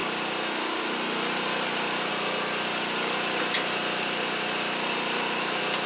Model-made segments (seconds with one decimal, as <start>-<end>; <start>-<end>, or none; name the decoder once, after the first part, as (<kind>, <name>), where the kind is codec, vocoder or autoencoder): none

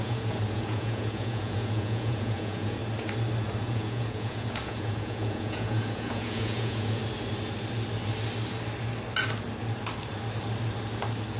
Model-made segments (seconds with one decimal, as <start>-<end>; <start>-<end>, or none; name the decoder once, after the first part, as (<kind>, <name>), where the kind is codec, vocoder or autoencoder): 0.0-2.8 (vocoder, Vocos); 3.6-7.0

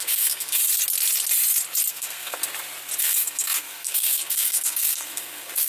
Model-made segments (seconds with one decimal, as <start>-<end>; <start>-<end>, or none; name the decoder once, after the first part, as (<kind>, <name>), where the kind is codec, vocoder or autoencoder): 0.0-0.6 (codec, SNAC); 1.9-2.4; 3.0-5.7